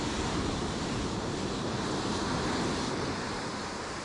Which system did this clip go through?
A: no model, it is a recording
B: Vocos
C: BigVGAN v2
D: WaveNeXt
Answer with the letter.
C